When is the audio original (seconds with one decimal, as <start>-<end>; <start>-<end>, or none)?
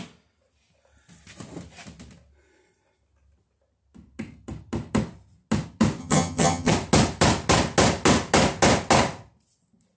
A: 0.0-6.0; 6.7-10.0